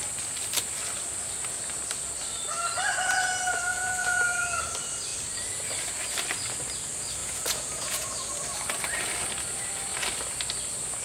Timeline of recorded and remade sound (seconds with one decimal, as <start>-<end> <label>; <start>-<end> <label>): 0.0-3.7 recorded; 3.7-4.6 remade; 4.6-7.2 recorded; 7.2-8.1 remade; 8.1-11.0 recorded